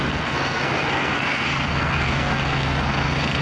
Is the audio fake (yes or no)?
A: yes